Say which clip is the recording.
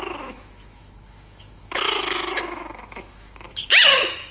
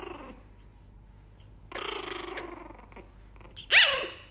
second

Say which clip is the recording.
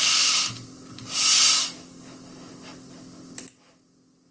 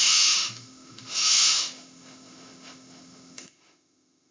first